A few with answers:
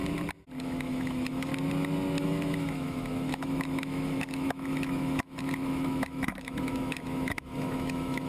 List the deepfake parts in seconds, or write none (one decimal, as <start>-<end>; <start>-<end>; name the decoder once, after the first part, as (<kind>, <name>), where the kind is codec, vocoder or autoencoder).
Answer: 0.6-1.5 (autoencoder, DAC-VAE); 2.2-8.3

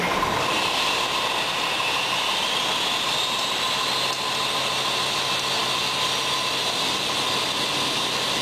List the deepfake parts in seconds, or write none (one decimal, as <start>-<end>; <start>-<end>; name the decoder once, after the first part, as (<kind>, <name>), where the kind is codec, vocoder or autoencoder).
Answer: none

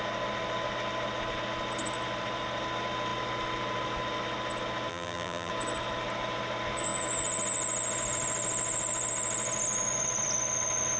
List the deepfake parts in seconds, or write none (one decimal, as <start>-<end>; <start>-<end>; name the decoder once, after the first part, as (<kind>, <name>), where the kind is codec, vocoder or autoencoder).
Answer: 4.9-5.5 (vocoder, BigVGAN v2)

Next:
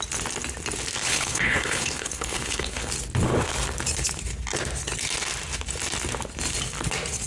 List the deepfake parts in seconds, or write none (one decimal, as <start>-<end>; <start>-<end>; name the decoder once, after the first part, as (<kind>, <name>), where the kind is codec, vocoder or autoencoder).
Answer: 1.0-2.9 (codec, HILCodec)